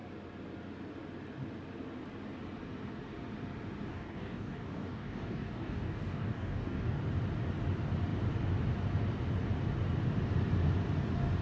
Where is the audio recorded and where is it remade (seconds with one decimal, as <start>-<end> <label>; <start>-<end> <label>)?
0.0-3.9 recorded; 3.9-7.0 remade; 7.0-11.4 recorded